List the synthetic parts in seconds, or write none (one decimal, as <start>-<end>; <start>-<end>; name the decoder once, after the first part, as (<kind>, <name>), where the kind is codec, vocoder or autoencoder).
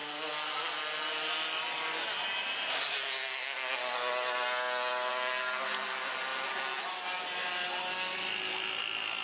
none